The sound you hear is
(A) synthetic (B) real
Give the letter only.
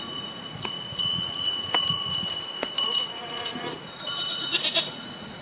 A